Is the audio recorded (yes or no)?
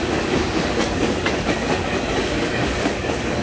no